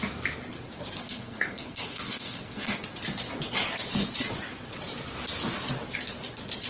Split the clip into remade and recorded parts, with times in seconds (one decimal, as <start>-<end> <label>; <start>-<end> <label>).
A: 0.0-1.0 recorded; 1.0-2.8 remade; 2.8-6.7 recorded

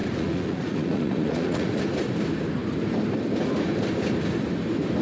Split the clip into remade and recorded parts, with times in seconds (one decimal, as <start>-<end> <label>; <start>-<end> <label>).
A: 0.0-1.8 remade; 1.8-5.0 recorded